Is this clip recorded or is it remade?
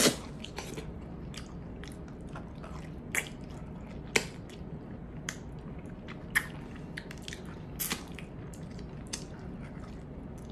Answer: recorded